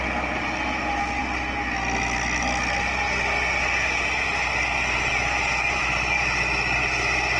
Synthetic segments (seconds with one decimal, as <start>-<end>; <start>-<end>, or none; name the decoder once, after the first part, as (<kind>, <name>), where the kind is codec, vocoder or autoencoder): none